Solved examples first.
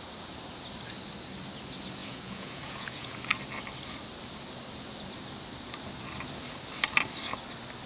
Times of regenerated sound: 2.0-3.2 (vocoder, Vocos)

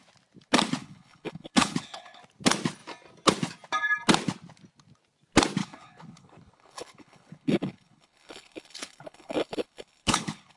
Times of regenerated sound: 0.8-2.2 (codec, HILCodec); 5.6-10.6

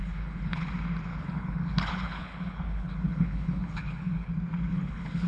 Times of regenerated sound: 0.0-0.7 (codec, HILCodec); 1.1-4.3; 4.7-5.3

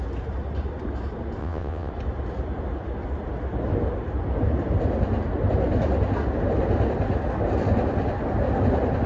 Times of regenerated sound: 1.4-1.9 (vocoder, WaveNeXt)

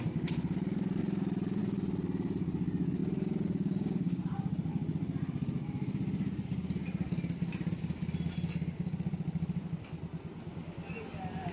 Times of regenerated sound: 1.0-1.6 (vocoder, BigVGAN v2); 3.0-4.7

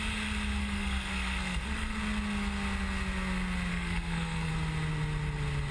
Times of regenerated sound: 0.6-1.9 (codec, SNAC); 3.7-4.5